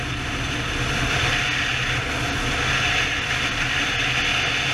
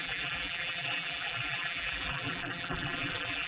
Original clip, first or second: first